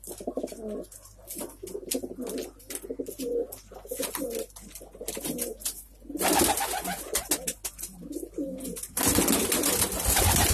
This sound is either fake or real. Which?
real